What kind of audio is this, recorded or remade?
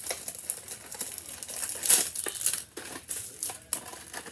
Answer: recorded